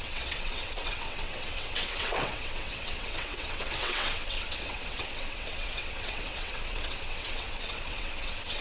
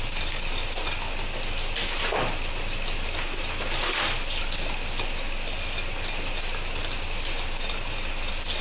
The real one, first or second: second